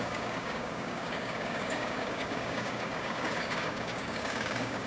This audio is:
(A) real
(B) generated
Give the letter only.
B